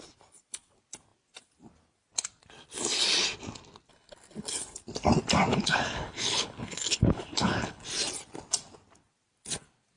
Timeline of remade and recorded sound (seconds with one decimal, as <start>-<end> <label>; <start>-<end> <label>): 0.0-3.9 recorded; 3.9-4.6 remade; 4.6-5.5 recorded; 5.5-7.8 remade; 7.8-10.0 recorded